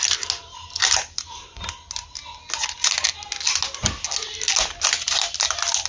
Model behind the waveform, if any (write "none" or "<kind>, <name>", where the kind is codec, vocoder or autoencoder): none